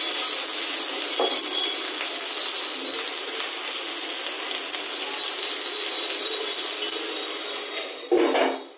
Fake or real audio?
real